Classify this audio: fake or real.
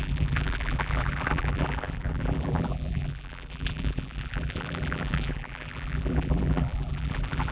fake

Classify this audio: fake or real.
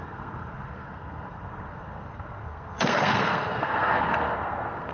fake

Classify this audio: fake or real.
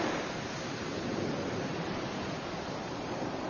fake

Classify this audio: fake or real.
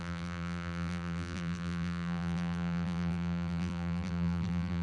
fake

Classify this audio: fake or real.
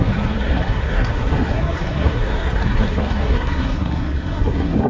fake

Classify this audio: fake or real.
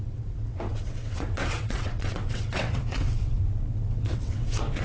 fake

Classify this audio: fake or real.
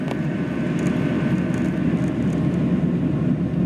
real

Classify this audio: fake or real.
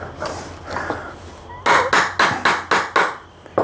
real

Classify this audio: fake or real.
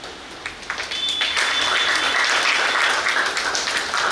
real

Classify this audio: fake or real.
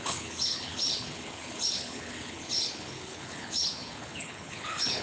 fake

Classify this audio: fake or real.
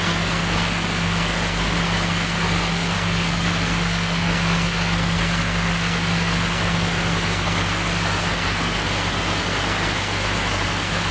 fake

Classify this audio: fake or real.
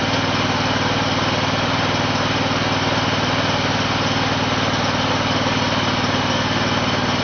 real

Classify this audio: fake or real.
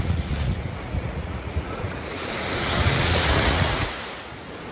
fake